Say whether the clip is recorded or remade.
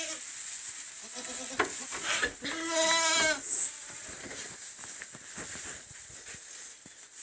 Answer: recorded